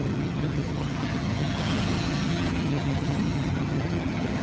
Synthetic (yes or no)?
yes